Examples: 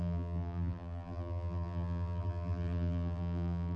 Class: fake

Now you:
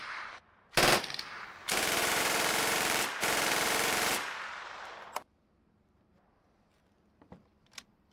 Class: fake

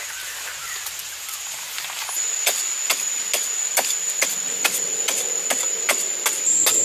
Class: real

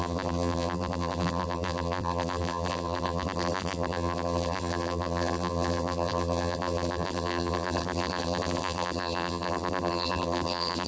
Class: fake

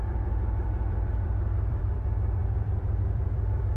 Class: fake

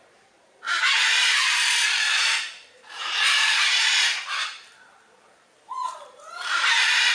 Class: fake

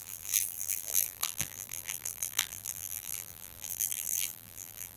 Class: fake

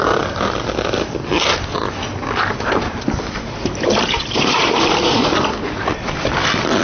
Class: real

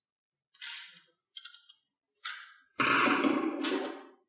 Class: fake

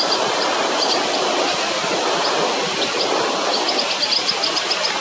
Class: real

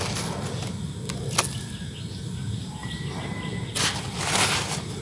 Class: real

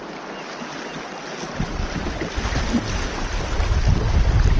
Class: real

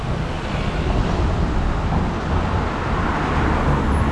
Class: real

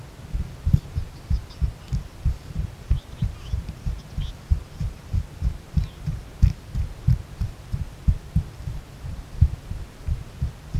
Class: real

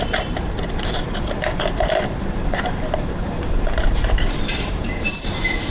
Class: fake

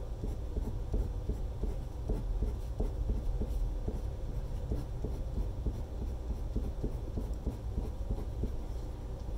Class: real